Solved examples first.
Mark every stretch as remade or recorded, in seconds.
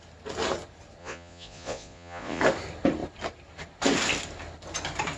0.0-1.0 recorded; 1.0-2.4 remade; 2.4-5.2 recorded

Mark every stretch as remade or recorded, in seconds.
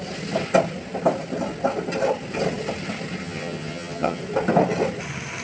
0.0-3.2 recorded; 3.2-4.2 remade; 4.2-5.4 recorded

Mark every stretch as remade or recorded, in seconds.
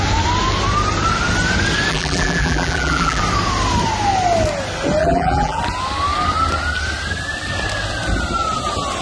0.0-1.9 recorded; 1.9-3.2 remade; 3.2-5.0 recorded; 5.0-5.6 remade; 5.6-9.0 recorded